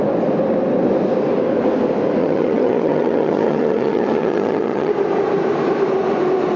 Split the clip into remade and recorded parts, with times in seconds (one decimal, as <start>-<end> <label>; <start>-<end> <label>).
0.0-2.2 recorded; 2.2-4.9 remade; 4.9-6.6 recorded

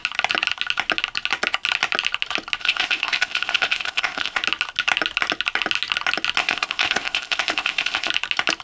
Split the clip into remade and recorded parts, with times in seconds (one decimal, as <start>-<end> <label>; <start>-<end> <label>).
0.0-2.6 recorded; 2.6-4.4 remade; 4.4-6.4 recorded; 6.4-8.1 remade; 8.1-8.6 recorded

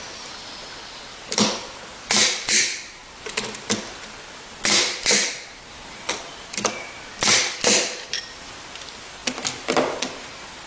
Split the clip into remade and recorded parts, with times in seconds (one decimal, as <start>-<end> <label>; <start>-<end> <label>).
0.0-10.7 recorded

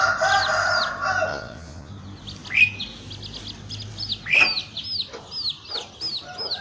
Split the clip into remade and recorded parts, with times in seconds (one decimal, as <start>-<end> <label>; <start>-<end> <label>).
0.0-1.3 recorded; 1.3-1.9 remade; 1.9-6.6 recorded

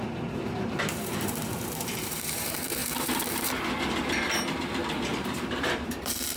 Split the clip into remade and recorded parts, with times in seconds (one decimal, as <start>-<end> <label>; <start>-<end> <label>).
0.0-6.4 remade

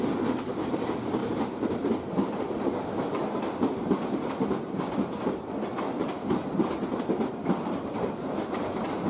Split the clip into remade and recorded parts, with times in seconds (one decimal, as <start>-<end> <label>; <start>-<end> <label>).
0.0-9.1 recorded

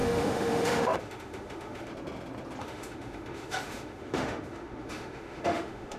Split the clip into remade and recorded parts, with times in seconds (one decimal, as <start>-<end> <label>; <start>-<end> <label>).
0.0-1.9 remade; 1.9-2.6 recorded; 2.6-6.0 remade